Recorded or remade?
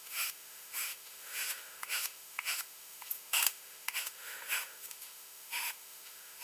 remade